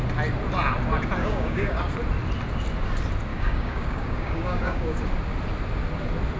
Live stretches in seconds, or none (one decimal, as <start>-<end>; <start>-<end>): 0.0-1.2; 1.8-3.3; 5.0-6.4